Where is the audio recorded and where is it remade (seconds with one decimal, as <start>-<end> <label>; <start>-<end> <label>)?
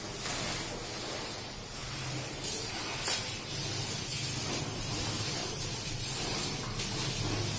0.0-5.4 recorded; 5.4-6.9 remade; 6.9-7.6 recorded